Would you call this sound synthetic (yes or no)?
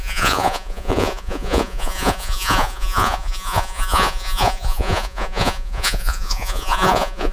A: yes